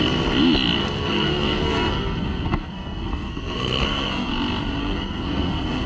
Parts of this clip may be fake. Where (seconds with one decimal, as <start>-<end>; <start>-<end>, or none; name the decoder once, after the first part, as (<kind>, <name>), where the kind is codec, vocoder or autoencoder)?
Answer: 0.8-4.3 (codec, SNAC); 4.8-5.9